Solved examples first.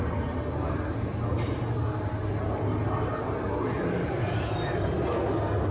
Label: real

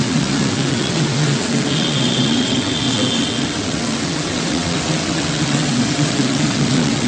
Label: fake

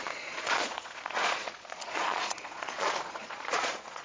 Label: fake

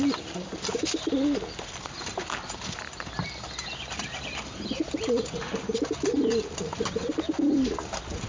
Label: real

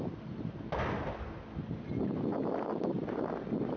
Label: real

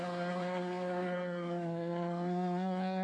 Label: fake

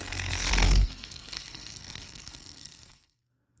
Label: fake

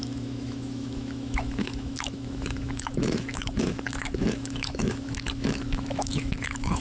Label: fake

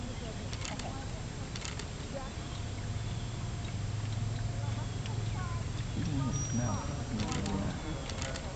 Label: real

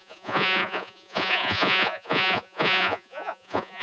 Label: fake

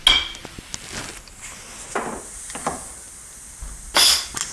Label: real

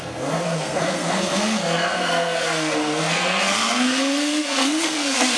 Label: fake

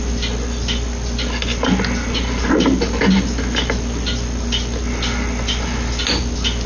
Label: real